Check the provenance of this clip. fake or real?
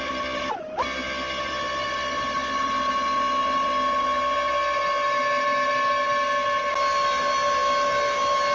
real